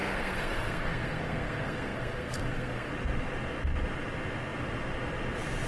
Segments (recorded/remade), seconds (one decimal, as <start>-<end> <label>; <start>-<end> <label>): 0.0-2.9 remade; 2.9-5.7 recorded